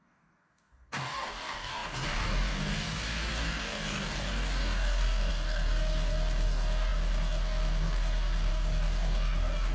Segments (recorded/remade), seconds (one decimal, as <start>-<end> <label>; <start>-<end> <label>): 0.0-9.7 remade